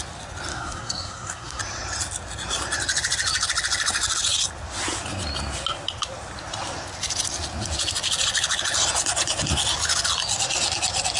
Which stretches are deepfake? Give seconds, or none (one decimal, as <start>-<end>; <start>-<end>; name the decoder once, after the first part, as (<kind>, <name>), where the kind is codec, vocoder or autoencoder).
0.5-1.6 (codec, SNAC)